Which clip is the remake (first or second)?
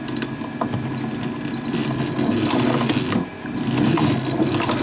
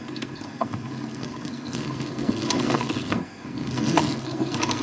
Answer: second